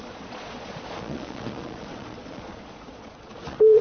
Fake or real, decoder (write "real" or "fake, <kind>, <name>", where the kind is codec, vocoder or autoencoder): fake, vocoder, Vocos